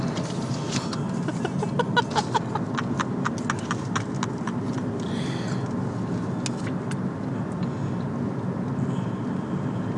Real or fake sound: real